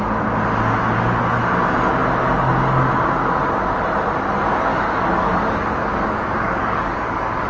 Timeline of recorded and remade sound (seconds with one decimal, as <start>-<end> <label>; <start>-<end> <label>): 0.0-4.7 recorded; 4.7-7.5 remade